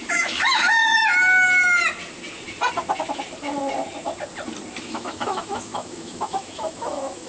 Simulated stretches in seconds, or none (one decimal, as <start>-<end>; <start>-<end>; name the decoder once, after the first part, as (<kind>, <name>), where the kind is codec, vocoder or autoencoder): 0.0-1.0 (autoencoder, DAC-VAE); 4.8-7.3